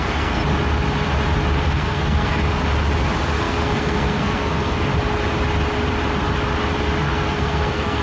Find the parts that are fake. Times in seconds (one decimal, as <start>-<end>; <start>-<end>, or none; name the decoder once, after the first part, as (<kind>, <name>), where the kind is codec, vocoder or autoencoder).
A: 0.0-0.4 (codec, SNAC); 1.6-2.4; 3.4-4.9; 7.0-8.0